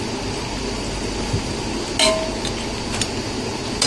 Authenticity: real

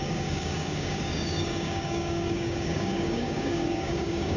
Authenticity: fake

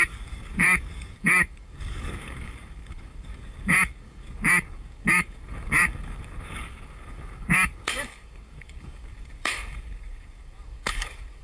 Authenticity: fake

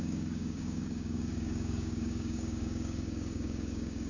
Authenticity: fake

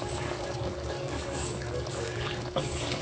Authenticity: fake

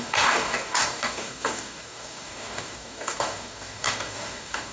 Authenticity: fake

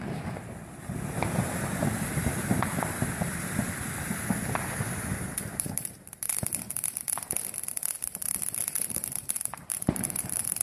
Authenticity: real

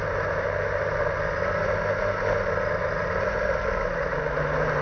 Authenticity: real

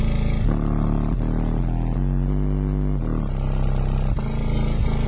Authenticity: real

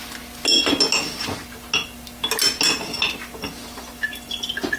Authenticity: real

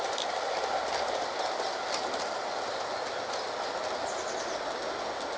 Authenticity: real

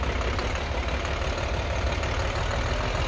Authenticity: real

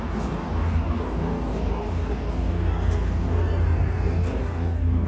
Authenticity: fake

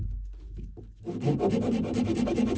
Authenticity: real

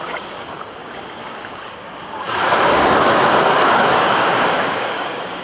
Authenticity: fake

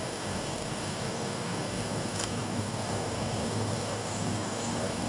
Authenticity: fake